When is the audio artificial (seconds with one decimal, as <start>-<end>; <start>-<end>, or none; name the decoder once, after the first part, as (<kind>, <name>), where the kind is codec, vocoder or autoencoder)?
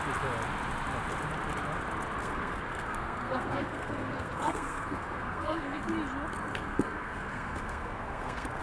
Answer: 2.2-5.8 (codec, SNAC); 6.5-8.6